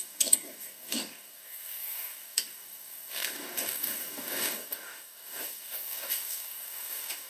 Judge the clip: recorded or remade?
remade